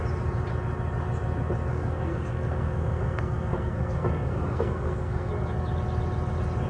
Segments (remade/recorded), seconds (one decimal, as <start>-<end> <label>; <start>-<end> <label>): 0.0-1.7 recorded; 1.7-5.3 remade; 5.3-6.7 recorded